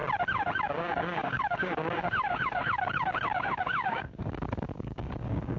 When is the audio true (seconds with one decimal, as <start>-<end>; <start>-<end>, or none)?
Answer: 0.0-0.6